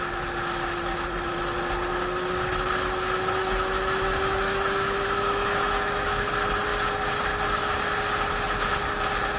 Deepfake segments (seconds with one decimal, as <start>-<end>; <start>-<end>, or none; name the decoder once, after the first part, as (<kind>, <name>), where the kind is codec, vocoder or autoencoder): 3.4-6.3 (autoencoder, DAC-VAE)